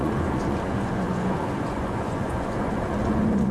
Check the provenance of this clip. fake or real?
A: fake